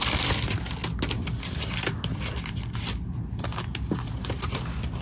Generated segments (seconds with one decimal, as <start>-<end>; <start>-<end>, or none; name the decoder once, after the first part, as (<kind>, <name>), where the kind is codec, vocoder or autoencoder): none